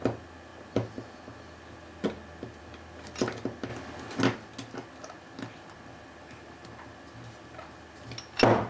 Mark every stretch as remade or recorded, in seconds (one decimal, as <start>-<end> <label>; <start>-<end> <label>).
0.0-8.7 recorded